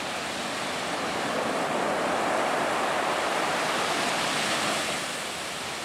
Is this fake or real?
real